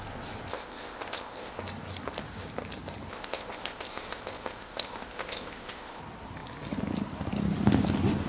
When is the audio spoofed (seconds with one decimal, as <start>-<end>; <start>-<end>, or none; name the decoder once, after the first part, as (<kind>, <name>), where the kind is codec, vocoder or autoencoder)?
0.5-1.6 (codec, ZipCodec); 3.1-6.0